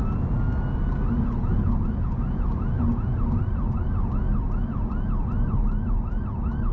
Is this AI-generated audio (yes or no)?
no